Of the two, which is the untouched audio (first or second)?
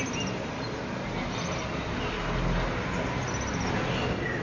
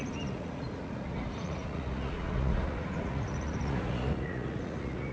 first